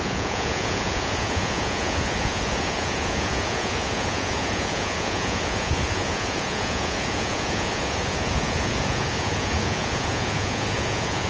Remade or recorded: remade